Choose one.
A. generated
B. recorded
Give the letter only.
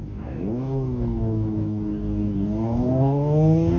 A